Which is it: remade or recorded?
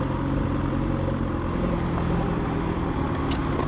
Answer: recorded